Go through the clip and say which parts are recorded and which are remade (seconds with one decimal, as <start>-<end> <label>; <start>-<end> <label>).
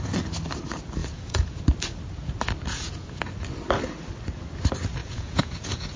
0.0-1.0 recorded; 1.0-1.6 remade; 1.6-2.7 recorded; 2.7-3.2 remade; 3.2-5.0 recorded; 5.0-6.0 remade